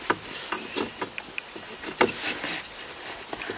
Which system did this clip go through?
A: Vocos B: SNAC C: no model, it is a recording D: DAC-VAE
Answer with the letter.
C